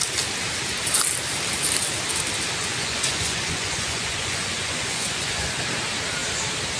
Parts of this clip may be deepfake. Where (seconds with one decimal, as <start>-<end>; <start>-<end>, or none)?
2.6-5.6